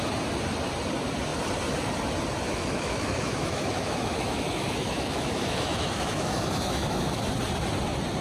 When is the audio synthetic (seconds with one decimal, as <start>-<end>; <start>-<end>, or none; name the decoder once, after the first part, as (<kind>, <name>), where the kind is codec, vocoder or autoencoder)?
2.5-7.3 (autoencoder, DAC-VAE)

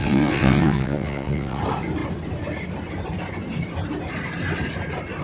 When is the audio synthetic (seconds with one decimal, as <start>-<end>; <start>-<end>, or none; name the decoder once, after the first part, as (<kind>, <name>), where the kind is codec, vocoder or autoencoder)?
0.0-1.6 (vocoder, WaveNeXt)

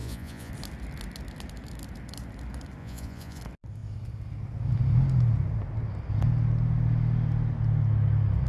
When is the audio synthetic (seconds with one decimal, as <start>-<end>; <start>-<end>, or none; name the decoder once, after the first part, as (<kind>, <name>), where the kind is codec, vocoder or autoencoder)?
0.0-0.5 (vocoder, Vocos); 2.8-3.4

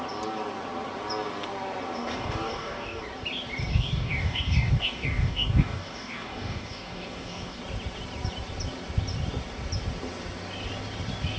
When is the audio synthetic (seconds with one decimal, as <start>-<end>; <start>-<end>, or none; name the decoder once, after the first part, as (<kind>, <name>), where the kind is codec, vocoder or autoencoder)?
2.1-3.0 (codec, DAC); 3.7-7.6